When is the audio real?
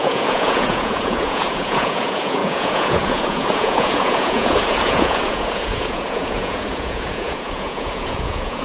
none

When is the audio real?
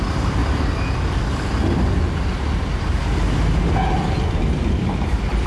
0.0-5.5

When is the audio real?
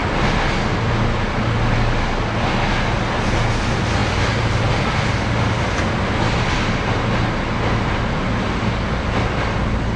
0.0-10.0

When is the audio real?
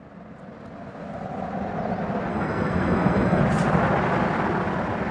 0.0-2.3; 3.4-5.1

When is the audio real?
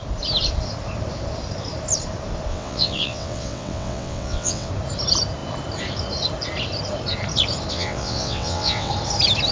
0.0-2.5; 4.7-7.7; 8.9-9.5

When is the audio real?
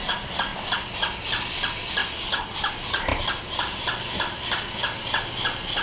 0.0-5.8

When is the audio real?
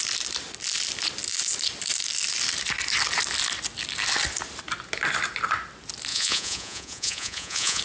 0.0-6.1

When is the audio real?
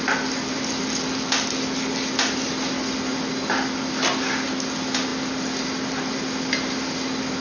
0.0-7.4